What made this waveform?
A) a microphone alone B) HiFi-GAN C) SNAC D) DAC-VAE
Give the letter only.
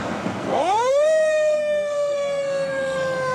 C